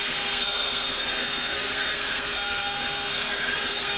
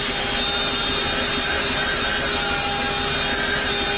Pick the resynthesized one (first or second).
first